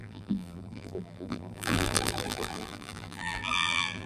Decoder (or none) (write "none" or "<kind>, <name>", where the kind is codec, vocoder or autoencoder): vocoder, BigVGAN v2